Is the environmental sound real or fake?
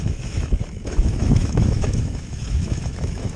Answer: fake